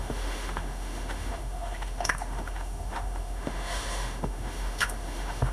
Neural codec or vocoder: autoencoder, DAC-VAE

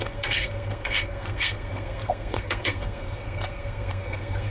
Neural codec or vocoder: codec, SNAC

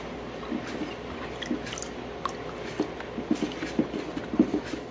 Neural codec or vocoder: none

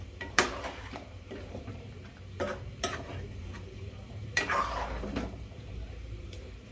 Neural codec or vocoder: vocoder, BigVGAN v2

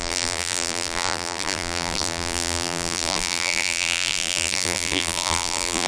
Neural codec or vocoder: vocoder, BigVGAN v2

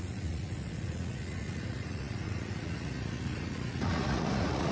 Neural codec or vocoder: vocoder, Vocos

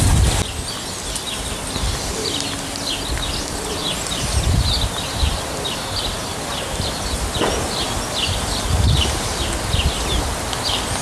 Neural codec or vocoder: none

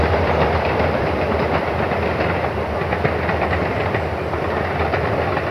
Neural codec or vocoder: vocoder, BigVGAN v2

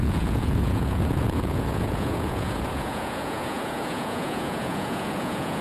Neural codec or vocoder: vocoder, Vocos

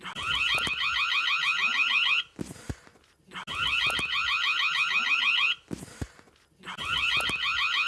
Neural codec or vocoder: none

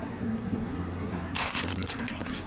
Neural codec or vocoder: codec, SNAC